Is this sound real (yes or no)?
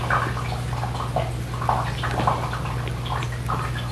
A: yes